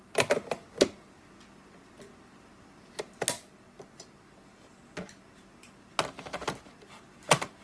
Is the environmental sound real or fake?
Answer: real